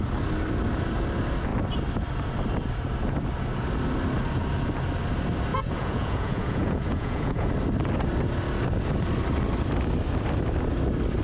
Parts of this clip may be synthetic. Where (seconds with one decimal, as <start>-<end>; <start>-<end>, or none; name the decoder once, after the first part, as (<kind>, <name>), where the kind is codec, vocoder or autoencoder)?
5.5-7.5 (vocoder, Vocos)